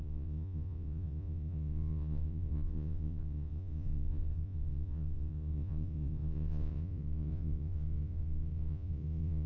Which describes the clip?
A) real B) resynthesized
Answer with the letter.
B